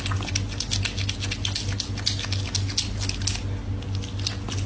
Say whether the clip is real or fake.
real